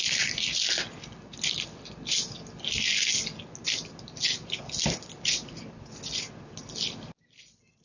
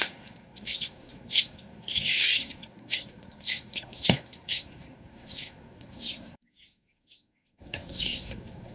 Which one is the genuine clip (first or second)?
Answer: first